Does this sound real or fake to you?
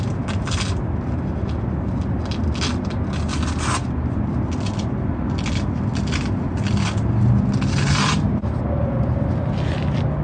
real